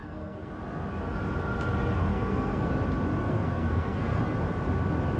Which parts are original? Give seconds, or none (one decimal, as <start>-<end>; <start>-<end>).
0.5-2.1; 2.7-3.2; 4.2-5.2